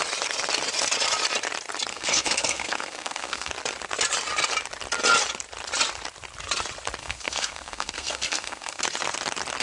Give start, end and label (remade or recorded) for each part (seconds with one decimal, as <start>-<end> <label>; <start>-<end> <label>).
0.0-1.9 recorded; 1.9-3.5 remade; 3.5-7.0 recorded; 7.0-8.8 remade; 8.8-9.6 recorded